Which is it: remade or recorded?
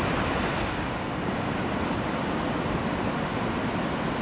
recorded